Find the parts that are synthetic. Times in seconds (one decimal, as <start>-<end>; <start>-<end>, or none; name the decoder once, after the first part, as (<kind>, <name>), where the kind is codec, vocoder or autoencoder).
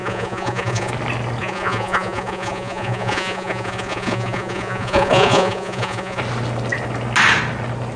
0.0-0.9 (vocoder, Vocos); 1.4-6.2